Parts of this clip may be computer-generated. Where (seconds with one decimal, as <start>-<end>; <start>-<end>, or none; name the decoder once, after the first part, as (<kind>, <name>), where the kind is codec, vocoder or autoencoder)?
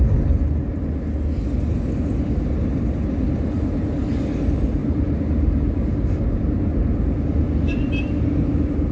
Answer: 4.8-6.2 (vocoder, BigVGAN v2)